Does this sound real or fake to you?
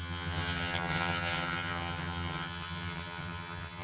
fake